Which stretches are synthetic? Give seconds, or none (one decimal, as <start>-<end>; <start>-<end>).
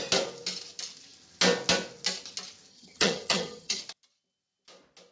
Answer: 2.7-3.8